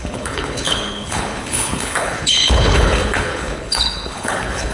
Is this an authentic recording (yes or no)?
no